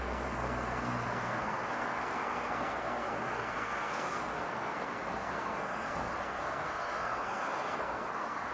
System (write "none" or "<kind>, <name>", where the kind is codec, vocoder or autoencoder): codec, SNAC